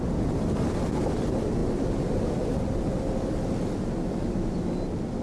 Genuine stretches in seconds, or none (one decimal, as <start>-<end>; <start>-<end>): 0.0-5.2